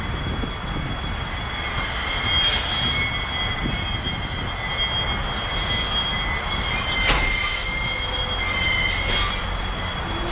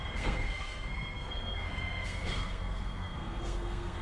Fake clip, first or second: second